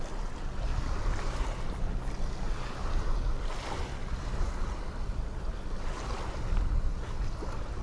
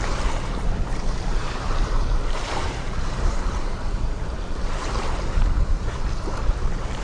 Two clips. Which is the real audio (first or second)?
first